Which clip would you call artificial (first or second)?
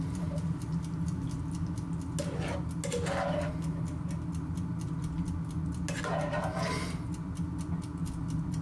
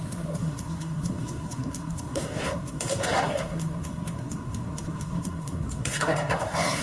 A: second